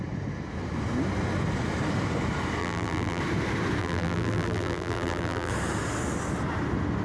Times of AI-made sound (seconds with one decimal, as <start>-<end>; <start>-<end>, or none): 2.6-3.2; 3.8-5.5